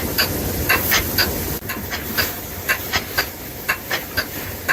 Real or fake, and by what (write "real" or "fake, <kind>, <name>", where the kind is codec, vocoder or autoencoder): real